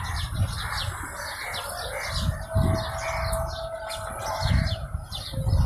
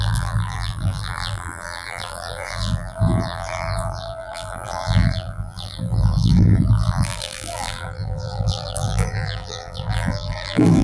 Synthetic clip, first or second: second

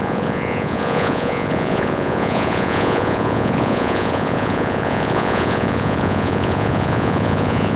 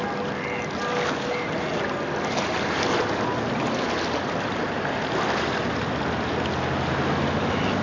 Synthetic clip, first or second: first